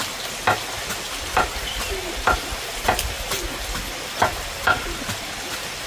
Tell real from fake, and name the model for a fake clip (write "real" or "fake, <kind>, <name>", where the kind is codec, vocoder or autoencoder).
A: real